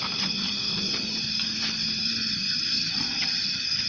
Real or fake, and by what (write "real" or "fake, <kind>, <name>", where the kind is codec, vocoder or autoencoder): real